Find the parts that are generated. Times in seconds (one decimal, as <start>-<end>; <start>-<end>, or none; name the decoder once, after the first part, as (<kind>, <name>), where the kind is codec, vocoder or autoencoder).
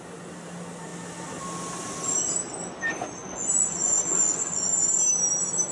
3.2-4.8 (vocoder, Vocos)